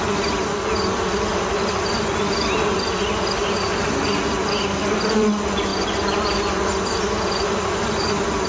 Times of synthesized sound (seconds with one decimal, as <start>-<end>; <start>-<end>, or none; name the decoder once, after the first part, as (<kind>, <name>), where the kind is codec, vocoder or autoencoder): none